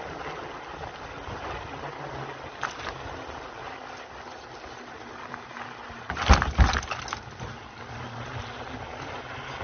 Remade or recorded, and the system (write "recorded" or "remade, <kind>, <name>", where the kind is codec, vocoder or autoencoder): recorded